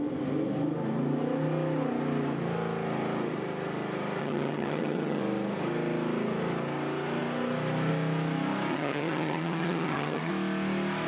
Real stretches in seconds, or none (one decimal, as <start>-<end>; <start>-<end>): 0.0-4.2; 5.2-8.7; 10.3-11.1